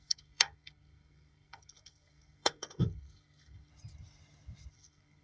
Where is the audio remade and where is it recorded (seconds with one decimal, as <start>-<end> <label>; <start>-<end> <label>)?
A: 0.0-3.7 remade; 3.7-4.7 recorded; 4.7-5.2 remade

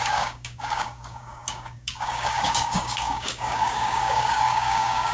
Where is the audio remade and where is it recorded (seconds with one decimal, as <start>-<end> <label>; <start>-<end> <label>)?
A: 0.0-5.1 remade

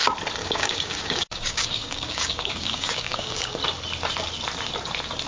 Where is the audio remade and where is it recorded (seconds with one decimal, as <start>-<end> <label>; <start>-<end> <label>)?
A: 0.0-0.4 recorded; 0.4-3.6 remade; 3.6-5.3 recorded

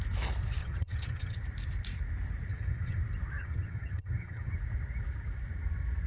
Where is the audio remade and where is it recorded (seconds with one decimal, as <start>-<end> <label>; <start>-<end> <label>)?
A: 0.0-0.6 recorded; 0.6-1.4 remade; 1.4-2.5 recorded; 2.5-3.0 remade; 3.0-3.4 recorded; 3.4-4.5 remade; 4.5-6.1 recorded

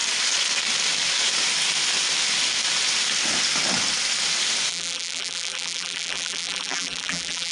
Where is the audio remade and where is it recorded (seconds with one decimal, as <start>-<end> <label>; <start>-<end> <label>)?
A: 0.0-4.7 recorded; 4.7-7.5 remade

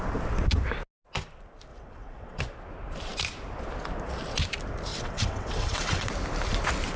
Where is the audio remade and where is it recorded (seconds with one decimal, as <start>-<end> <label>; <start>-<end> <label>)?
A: 0.0-1.7 recorded; 1.7-2.4 remade; 2.4-4.9 recorded; 4.9-6.1 remade; 6.1-7.0 recorded